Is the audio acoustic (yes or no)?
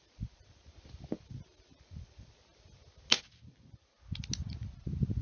yes